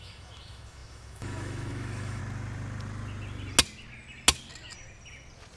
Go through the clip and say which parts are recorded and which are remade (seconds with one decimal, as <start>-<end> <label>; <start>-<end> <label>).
0.0-2.2 remade; 2.2-5.6 recorded